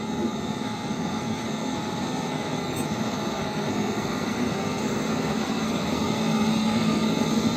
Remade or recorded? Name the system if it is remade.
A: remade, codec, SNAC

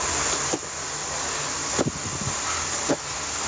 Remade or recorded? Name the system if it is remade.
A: recorded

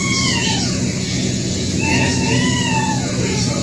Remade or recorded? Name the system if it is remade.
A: remade, vocoder, Vocos